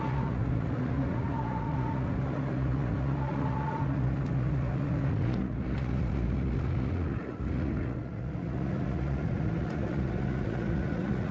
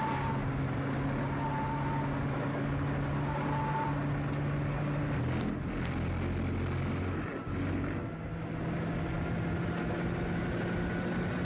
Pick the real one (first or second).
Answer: second